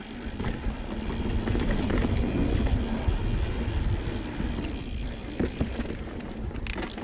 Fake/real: real